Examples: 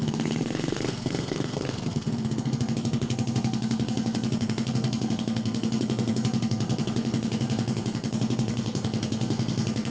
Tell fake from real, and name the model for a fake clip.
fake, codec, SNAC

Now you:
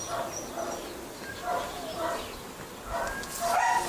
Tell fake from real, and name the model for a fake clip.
real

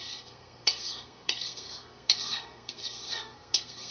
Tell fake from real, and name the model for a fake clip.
fake, codec, SNAC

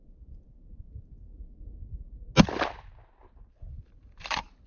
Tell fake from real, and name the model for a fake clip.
real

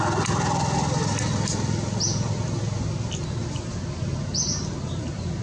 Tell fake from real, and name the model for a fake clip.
real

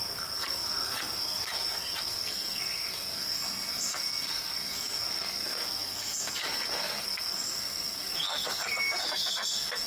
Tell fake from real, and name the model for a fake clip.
fake, codec, SNAC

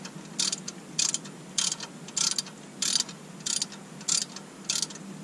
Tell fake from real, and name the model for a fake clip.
real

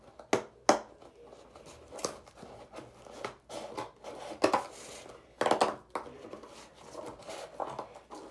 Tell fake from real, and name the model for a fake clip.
real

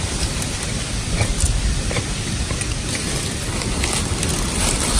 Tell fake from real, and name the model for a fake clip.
real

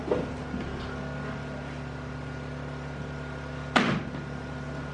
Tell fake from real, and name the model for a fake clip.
real